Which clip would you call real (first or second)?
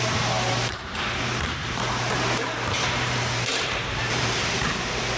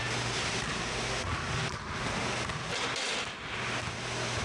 second